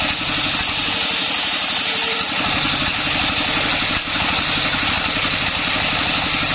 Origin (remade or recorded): recorded